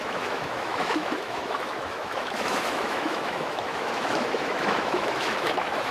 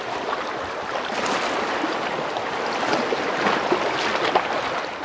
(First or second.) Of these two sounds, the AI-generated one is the first